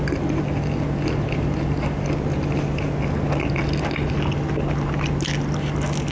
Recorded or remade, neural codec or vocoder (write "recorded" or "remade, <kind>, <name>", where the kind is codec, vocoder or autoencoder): recorded